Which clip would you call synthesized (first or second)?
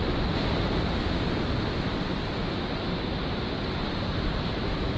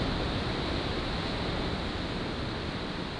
first